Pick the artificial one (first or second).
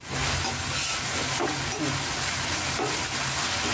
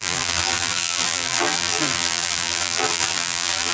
second